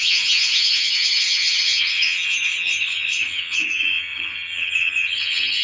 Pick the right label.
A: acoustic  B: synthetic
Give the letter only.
B